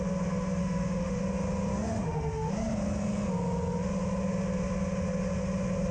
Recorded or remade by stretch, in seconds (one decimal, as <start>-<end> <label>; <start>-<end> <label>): 0.0-0.6 recorded; 0.6-1.2 remade; 1.2-1.7 recorded; 1.7-2.5 remade; 2.5-5.9 recorded